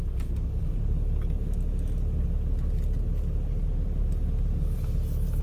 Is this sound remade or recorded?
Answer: recorded